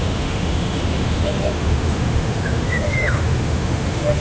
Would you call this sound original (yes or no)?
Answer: no